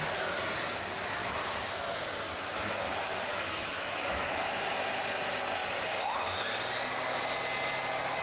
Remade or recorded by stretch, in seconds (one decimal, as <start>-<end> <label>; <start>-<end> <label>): 0.0-1.2 recorded; 1.2-2.0 remade; 2.0-3.3 recorded; 3.3-3.9 remade; 3.9-8.2 recorded